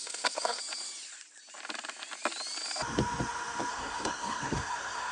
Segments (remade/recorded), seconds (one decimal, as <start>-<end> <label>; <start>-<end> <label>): 0.0-0.6 remade; 0.6-3.7 recorded; 3.7-5.1 remade